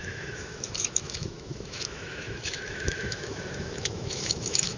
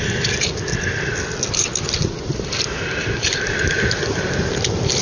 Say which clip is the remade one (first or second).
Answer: first